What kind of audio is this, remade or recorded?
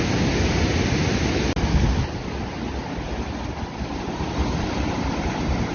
recorded